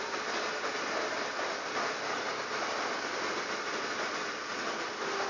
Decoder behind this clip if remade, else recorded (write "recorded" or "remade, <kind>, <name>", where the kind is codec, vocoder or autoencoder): recorded